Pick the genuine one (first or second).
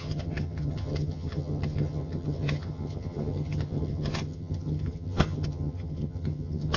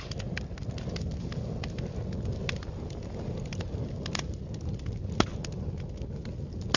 second